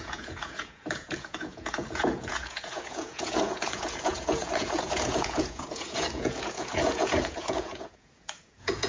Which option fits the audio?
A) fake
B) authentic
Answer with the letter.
A